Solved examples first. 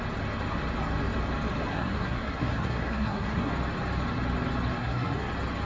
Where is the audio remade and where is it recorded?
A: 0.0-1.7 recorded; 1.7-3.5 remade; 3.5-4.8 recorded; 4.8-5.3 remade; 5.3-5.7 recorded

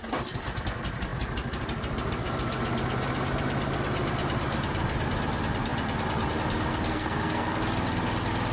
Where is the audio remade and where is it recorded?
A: 0.0-6.7 recorded; 6.7-7.6 remade; 7.6-8.5 recorded